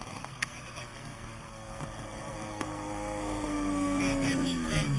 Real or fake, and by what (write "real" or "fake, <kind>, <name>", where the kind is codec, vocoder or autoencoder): fake, codec, SNAC